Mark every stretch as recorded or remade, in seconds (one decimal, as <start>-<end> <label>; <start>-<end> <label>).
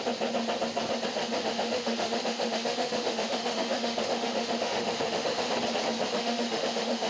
0.0-1.2 recorded; 1.2-5.5 remade; 5.5-6.1 recorded; 6.1-7.1 remade